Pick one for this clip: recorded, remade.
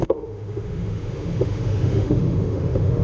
remade